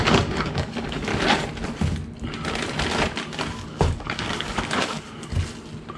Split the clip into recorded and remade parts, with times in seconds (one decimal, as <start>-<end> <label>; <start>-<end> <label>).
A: 0.0-1.1 remade; 1.1-3.5 recorded; 3.5-5.3 remade; 5.3-6.0 recorded